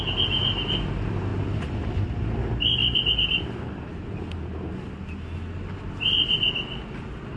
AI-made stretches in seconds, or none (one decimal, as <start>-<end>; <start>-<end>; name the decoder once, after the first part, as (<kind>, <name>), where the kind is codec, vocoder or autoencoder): none